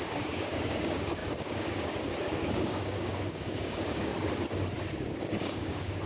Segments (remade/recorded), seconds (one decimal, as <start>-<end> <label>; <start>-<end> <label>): 0.0-4.1 remade; 4.1-4.9 recorded; 4.9-6.1 remade